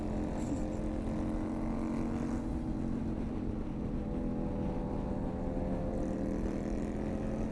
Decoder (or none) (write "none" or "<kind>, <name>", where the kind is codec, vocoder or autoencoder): none